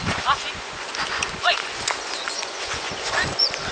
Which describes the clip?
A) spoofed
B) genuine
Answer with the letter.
A